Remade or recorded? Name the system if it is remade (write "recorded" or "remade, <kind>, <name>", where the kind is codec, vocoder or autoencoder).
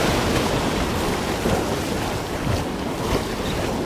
recorded